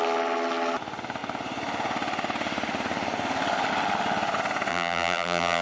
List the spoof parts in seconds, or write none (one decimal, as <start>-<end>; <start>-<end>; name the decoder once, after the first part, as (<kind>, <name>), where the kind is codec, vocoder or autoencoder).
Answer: 4.7-5.6 (vocoder, BigVGAN v2)

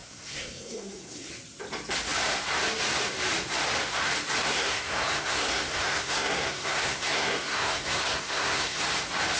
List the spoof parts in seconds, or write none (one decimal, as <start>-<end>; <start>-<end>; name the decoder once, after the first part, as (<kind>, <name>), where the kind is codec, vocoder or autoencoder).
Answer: 0.0-1.3 (codec, SNAC); 4.4-8.8

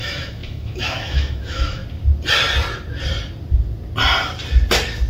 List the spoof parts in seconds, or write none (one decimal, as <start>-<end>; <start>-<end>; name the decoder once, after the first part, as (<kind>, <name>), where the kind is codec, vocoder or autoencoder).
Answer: 0.0-1.8 (autoencoder, DAC-VAE)

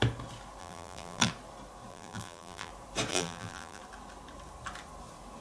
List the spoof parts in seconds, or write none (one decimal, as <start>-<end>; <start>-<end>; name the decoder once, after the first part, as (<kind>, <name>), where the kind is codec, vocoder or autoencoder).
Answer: 0.6-1.3 (vocoder, BigVGAN v2); 1.9-2.7; 3.1-3.8

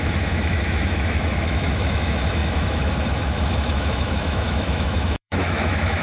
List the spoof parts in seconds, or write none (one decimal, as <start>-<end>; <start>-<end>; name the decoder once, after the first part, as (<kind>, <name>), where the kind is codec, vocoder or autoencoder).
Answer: 0.0-6.0 (autoencoder, DAC-VAE)

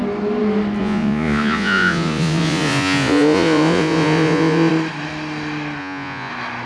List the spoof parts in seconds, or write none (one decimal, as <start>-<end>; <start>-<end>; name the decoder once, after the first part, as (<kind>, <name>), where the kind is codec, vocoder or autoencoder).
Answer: 0.8-4.7 (vocoder, Vocos); 5.8-6.3

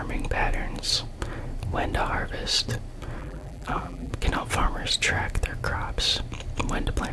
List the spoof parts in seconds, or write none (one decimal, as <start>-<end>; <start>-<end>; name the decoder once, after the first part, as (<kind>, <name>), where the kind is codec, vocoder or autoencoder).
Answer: 3.2-4.1 (vocoder, BigVGAN v2)